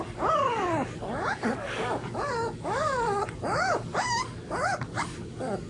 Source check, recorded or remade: remade